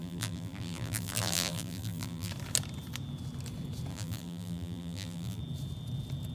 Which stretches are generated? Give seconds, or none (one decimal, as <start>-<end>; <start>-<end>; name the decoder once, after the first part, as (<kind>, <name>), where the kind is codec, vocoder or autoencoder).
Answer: 0.0-2.3 (vocoder, BigVGAN v2); 3.9-5.4